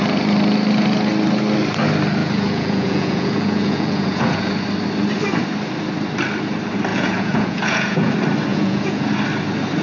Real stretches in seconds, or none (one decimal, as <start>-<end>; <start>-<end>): 0.0-2.2; 4.5-6.9; 8.1-8.5; 9.1-9.8